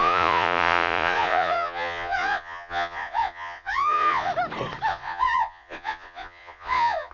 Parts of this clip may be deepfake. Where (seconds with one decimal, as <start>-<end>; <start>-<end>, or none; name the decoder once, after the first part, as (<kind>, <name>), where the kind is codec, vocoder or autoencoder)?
0.0-4.3 (vocoder, Vocos); 4.9-7.1